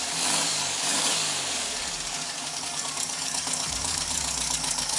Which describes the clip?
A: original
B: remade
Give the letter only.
B